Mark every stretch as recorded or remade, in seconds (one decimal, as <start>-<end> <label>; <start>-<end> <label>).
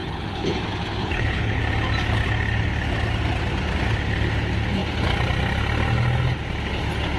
0.0-0.6 remade; 0.6-1.0 recorded; 1.0-1.6 remade; 1.6-7.2 recorded